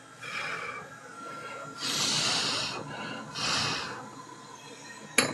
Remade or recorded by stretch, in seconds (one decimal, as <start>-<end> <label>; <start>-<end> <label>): 0.0-5.3 recorded